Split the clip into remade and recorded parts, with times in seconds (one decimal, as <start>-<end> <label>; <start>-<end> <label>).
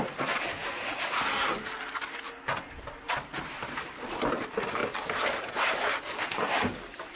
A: 0.0-0.6 remade; 0.6-3.3 recorded; 3.3-4.8 remade; 4.8-6.1 recorded; 6.1-7.2 remade